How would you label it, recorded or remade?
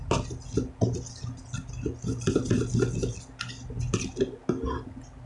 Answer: recorded